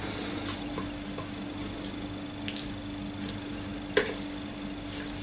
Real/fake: real